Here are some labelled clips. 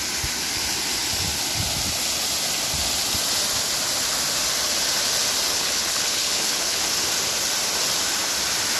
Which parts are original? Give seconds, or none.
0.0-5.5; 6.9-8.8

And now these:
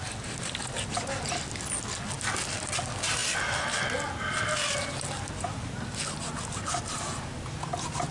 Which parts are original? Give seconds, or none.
0.0-8.1

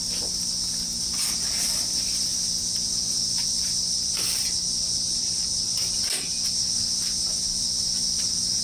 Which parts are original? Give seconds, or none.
0.0-8.6

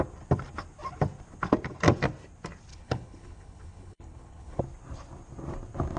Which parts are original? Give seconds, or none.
0.0-2.7; 4.6-6.0

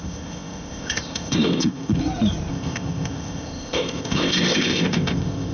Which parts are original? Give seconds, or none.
2.0-2.5

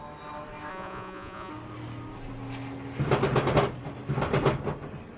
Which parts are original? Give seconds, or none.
0.0-0.7; 1.5-5.2

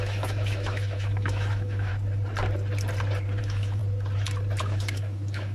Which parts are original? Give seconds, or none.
1.9-3.4; 3.8-4.6

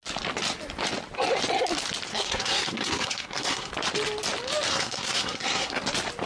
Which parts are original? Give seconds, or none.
0.0-2.1; 3.7-4.7; 5.8-6.3